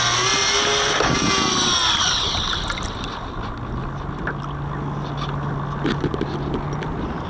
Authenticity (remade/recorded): recorded